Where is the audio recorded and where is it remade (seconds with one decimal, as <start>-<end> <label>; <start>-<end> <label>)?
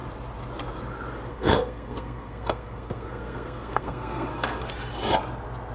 0.0-1.3 recorded; 1.3-4.7 remade; 4.7-5.7 recorded